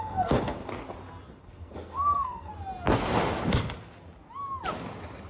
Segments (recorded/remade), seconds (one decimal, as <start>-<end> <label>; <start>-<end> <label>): 0.0-0.7 remade; 0.7-1.4 recorded; 1.4-2.5 remade; 2.5-5.3 recorded